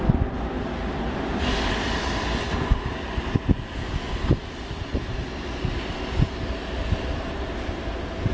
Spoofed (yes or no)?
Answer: no